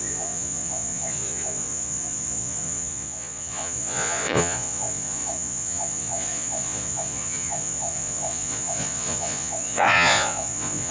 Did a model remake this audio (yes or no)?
yes